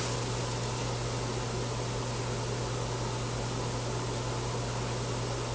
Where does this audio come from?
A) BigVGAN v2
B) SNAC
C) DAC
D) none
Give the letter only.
D